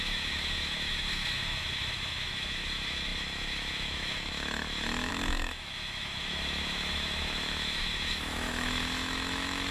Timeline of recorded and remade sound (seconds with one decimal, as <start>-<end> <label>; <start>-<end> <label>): 0.0-9.7 remade